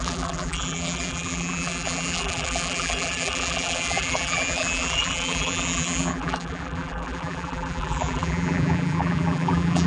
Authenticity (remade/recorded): remade